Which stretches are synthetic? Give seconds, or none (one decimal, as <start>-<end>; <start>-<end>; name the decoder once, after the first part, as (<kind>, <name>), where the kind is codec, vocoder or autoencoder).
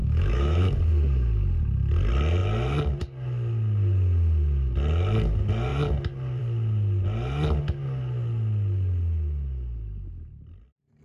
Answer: 0.0-0.8 (autoencoder, DAC-VAE)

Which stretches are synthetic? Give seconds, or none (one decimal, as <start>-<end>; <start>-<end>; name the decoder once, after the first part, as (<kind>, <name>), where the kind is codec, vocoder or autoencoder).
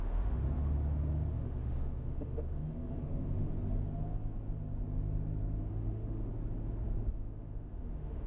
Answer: 0.0-0.4 (autoencoder, DAC-VAE); 1.3-3.5; 5.7-6.3; 7.1-8.3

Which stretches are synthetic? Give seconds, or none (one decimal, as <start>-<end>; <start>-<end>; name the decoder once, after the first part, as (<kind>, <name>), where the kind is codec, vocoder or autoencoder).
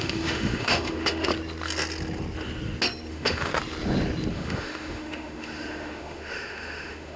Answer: 0.0-1.3 (autoencoder, DAC-VAE); 3.1-3.5; 4.3-7.2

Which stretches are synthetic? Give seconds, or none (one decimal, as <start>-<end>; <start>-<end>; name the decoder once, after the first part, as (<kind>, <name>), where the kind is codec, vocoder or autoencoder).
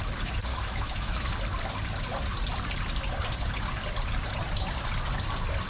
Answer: 0.5-1.3 (autoencoder, DAC-VAE)